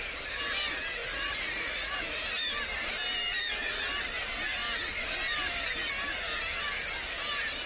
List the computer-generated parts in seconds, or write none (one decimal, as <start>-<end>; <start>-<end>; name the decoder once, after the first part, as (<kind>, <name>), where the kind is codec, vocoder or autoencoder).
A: 1.0-2.0 (vocoder, Vocos)